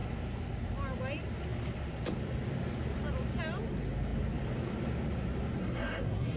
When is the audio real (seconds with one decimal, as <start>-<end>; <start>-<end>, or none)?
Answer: 0.0-5.6